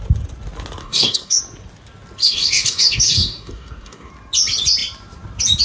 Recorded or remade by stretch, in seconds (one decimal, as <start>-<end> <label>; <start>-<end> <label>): 0.0-0.8 recorded; 0.8-1.4 remade; 1.4-2.2 recorded; 2.2-4.1 remade; 4.1-5.6 recorded